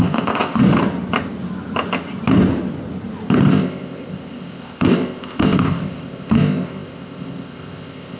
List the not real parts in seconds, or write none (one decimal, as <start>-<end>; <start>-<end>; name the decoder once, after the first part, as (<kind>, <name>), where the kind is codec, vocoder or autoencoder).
0.0-0.6 (codec, ZipCodec); 3.5-8.2